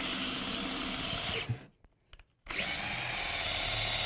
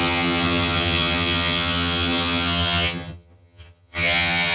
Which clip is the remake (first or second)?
second